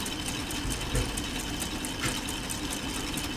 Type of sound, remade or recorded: recorded